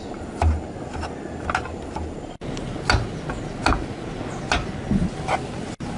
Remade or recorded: recorded